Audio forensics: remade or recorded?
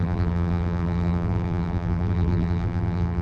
remade